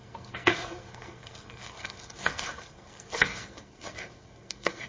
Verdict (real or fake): fake